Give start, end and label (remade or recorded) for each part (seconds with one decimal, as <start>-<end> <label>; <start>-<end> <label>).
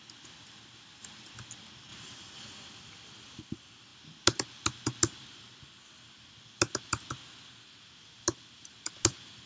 0.0-9.5 recorded